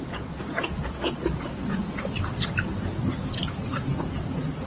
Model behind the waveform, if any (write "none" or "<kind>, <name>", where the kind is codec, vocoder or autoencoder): none